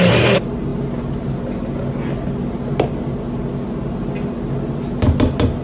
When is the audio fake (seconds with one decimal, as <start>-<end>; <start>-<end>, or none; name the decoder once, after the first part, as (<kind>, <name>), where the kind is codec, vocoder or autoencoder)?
none